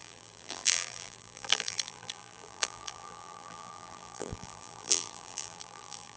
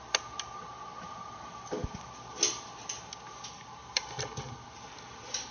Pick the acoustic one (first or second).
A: second